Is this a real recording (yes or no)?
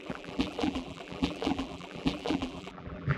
no